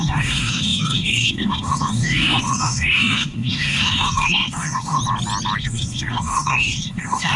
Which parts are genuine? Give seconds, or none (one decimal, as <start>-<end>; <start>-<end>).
5.0-5.6